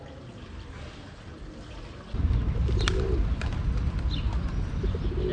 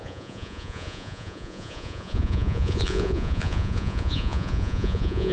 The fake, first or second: second